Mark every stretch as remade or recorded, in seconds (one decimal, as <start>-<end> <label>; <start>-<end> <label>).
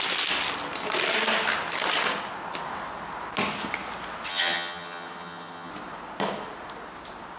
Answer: 0.0-4.3 recorded; 4.3-5.7 remade; 5.7-7.4 recorded